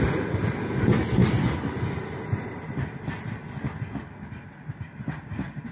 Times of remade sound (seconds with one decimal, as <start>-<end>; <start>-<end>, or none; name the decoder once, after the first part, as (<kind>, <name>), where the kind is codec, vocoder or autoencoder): none